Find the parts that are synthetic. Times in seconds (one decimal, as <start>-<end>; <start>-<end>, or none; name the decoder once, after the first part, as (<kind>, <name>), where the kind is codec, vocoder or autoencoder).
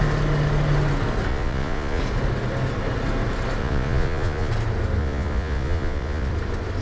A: 1.3-2.0 (vocoder, Vocos); 3.6-4.5; 5.0-6.3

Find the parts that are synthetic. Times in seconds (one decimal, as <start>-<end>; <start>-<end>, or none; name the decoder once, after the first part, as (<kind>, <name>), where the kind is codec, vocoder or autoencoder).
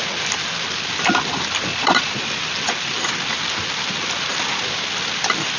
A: 1.7-2.2 (vocoder, Vocos)